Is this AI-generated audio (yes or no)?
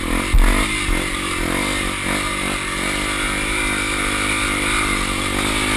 no